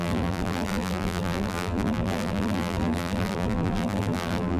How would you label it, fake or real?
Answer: fake